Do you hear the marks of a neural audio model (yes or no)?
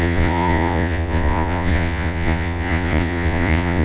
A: yes